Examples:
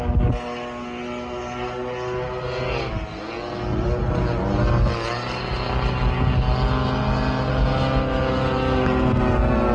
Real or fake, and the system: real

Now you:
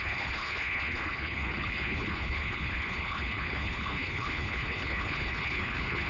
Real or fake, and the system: fake, codec, HILCodec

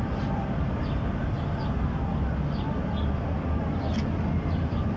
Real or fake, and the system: real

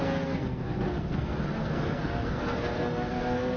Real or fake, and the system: fake, codec, SNAC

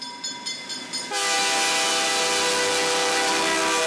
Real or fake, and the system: real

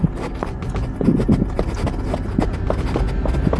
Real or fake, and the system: real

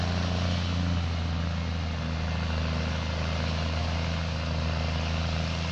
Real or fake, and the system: real